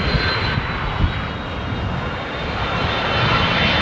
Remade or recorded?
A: recorded